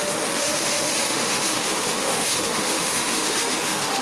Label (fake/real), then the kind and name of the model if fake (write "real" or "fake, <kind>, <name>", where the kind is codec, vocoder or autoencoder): fake, autoencoder, DAC-VAE